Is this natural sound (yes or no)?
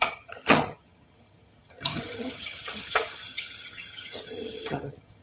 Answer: no